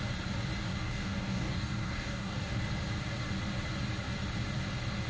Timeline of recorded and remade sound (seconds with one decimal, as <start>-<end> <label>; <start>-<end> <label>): 0.0-0.7 recorded; 0.7-2.6 remade; 2.6-5.1 recorded